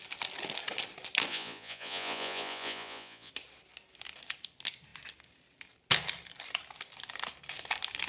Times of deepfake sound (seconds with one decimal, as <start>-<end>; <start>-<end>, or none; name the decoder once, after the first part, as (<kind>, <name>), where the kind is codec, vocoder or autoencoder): 1.3-3.3 (vocoder, Vocos)